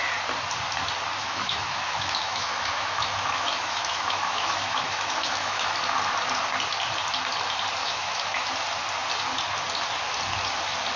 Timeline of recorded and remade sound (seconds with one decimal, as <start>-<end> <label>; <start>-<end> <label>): 0.0-1.2 recorded; 1.2-5.7 remade; 5.7-7.8 recorded; 7.8-8.5 remade; 8.5-11.0 recorded